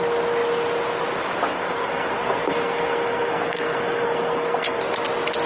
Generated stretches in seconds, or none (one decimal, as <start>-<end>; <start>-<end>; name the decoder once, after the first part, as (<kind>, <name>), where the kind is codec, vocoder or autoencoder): 1.5-4.8 (codec, SNAC)